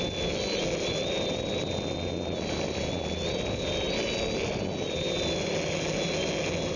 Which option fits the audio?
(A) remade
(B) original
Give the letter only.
B